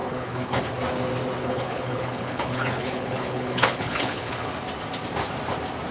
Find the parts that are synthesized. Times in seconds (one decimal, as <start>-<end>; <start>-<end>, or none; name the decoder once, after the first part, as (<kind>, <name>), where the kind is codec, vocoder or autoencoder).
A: 0.0-0.6 (codec, HILCodec); 1.4-4.5